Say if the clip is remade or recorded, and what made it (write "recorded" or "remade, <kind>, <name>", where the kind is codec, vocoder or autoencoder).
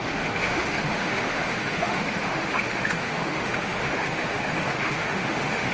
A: remade, autoencoder, DAC-VAE